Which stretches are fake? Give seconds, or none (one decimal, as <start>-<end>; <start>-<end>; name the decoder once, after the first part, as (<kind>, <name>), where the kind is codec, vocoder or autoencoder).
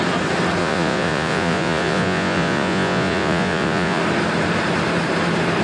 0.6-4.0 (vocoder, Vocos)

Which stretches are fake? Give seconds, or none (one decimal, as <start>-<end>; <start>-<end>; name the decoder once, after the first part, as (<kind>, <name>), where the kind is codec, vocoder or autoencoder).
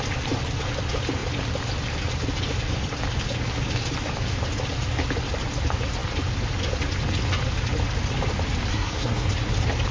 8.7-9.3 (codec, SNAC)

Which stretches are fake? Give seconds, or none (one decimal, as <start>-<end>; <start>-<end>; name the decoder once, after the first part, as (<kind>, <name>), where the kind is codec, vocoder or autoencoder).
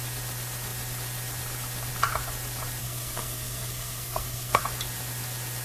2.8-4.6 (codec, SNAC)